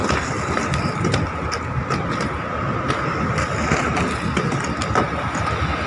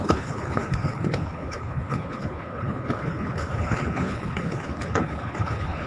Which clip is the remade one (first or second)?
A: second